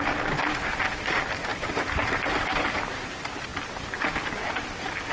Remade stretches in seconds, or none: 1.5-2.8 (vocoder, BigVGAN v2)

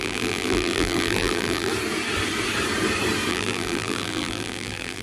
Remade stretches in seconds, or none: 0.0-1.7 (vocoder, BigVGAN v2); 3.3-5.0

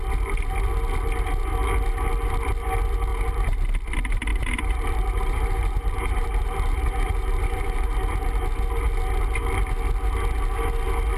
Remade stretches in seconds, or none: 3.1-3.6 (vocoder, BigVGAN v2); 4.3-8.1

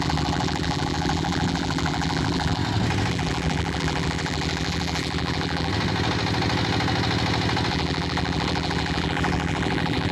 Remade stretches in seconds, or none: 0.0-2.6 (vocoder, BigVGAN v2); 3.1-5.7; 7.7-10.1

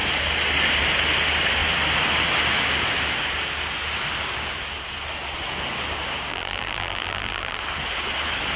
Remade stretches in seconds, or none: 6.3-7.6 (vocoder, BigVGAN v2)

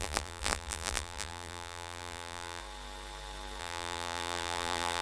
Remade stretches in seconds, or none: 0.0-2.6 (vocoder, BigVGAN v2); 3.6-5.0

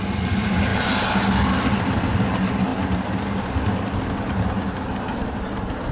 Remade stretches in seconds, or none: none

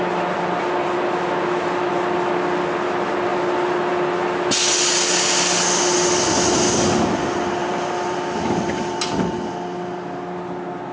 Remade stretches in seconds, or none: 7.6-9.1 (vocoder, BigVGAN v2)